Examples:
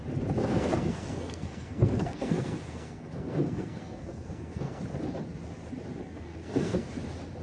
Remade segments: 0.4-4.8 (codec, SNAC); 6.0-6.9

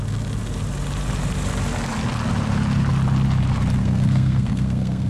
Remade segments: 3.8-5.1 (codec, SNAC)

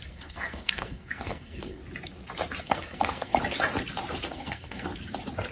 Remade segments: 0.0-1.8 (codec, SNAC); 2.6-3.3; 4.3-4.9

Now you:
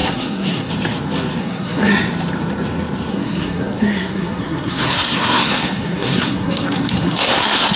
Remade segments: 0.0-0.7 (codec, SNAC); 1.4-1.9; 3.1-7.8